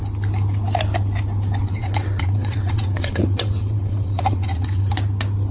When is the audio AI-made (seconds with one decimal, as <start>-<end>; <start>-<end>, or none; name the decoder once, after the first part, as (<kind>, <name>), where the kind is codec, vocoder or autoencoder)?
1.6-4.9 (vocoder, WaveNeXt)